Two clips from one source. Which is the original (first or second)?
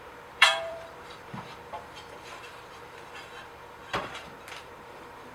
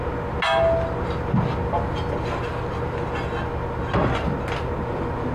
second